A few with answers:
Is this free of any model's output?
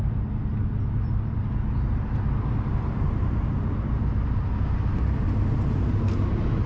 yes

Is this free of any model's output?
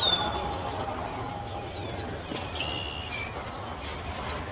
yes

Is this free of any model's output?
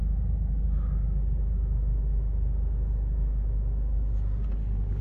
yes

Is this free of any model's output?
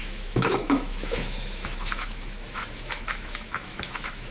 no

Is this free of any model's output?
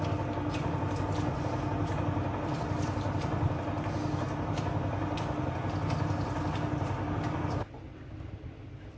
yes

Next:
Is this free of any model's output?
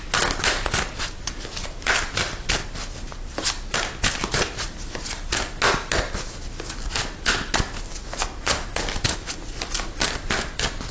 yes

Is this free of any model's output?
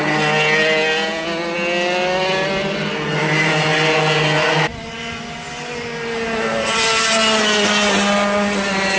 yes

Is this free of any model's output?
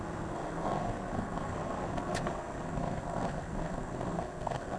no